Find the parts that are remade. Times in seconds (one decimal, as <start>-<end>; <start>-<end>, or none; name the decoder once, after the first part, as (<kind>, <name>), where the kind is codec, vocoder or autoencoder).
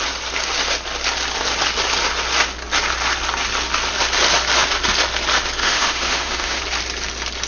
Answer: 5.6-6.6 (autoencoder, DAC-VAE)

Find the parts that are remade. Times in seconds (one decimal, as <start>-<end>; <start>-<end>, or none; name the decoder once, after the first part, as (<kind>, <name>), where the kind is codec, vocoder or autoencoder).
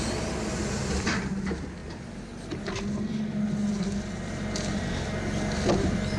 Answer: none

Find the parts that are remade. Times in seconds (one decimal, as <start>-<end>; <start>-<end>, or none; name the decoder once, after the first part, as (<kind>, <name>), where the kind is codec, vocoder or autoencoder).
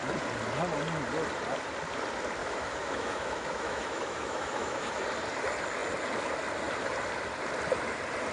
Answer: 2.4-5.0 (autoencoder, DAC-VAE)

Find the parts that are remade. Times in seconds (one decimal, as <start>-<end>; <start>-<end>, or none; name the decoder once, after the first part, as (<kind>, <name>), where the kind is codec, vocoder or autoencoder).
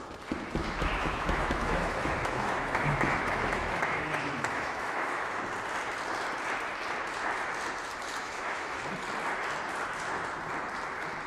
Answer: 0.6-5.4 (autoencoder, DAC-VAE); 8.2-8.8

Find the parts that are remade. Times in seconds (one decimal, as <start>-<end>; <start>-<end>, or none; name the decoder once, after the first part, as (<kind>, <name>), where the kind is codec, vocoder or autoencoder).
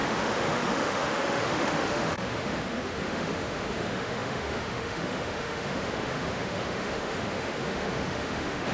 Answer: 0.0-8.7 (autoencoder, DAC-VAE)